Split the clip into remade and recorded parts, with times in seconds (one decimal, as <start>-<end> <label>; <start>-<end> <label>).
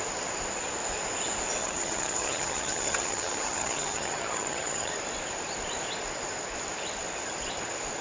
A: 0.0-1.6 recorded; 1.6-4.9 remade; 4.9-8.0 recorded